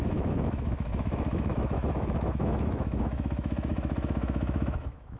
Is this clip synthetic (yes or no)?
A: yes